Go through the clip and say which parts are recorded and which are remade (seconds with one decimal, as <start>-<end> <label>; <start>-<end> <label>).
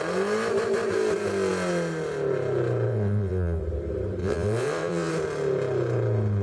0.0-2.9 recorded; 2.9-3.6 remade; 3.6-4.2 recorded; 4.2-5.1 remade; 5.1-6.4 recorded